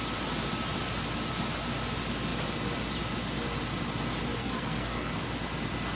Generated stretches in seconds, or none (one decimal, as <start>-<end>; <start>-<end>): 4.4-5.1